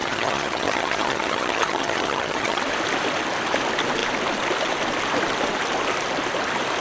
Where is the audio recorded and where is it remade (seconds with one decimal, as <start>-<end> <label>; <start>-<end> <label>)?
0.0-2.6 remade; 2.6-6.8 recorded